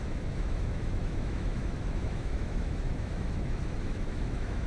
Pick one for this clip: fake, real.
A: fake